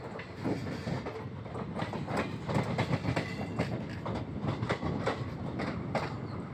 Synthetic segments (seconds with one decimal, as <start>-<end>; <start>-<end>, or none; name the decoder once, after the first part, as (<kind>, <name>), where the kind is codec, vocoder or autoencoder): none